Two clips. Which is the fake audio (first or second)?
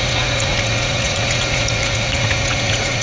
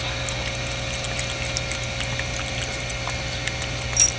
first